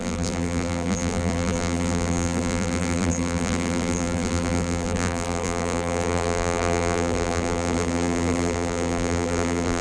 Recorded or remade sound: remade